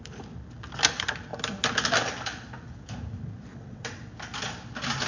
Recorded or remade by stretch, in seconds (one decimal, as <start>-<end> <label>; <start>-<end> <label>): 0.0-3.5 recorded; 3.5-4.0 remade; 4.0-5.1 recorded

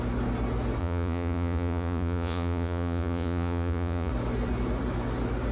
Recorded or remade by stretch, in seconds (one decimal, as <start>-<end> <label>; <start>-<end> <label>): 0.0-0.8 recorded; 0.8-4.1 remade; 4.1-5.5 recorded

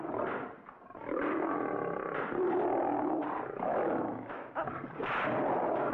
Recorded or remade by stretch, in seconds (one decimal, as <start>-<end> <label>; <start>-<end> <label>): 0.0-3.7 recorded; 3.7-4.5 remade; 4.5-5.9 recorded

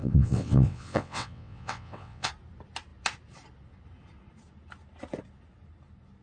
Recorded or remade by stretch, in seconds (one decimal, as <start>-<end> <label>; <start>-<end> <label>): 0.0-2.3 remade; 2.3-6.2 recorded

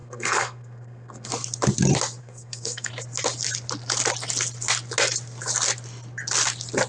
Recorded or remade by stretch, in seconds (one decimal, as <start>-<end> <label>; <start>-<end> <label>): 0.0-1.3 remade; 1.3-2.2 recorded; 2.2-2.9 remade; 2.9-6.9 recorded